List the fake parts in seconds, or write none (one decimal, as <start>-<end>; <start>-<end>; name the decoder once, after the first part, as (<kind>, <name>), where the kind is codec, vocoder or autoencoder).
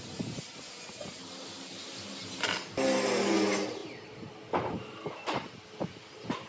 none